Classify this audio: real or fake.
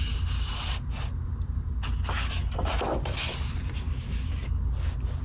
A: real